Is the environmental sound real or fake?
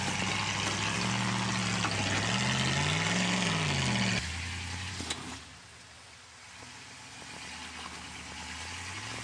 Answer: real